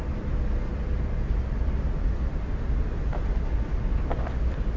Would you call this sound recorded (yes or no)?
yes